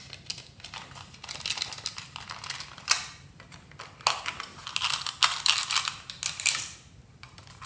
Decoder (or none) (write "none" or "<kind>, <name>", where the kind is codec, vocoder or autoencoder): none